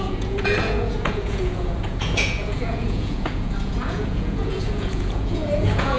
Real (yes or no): no